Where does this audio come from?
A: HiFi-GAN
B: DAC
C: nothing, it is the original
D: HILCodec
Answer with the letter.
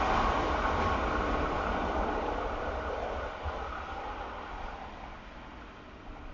C